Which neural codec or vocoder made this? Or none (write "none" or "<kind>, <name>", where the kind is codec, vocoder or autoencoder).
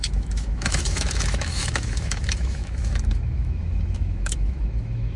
autoencoder, DAC-VAE